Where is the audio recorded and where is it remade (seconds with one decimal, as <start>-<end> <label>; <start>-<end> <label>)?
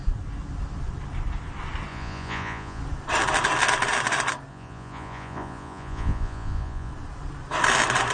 0.0-1.9 recorded; 1.9-2.8 remade; 2.8-4.5 recorded; 4.5-6.9 remade; 6.9-8.1 recorded